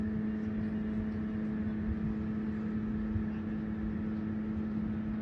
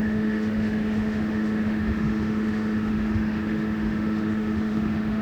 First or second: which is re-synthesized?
second